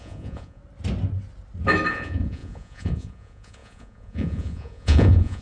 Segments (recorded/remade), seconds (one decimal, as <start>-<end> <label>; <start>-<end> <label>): 0.0-0.6 remade; 0.6-1.9 recorded; 1.9-5.4 remade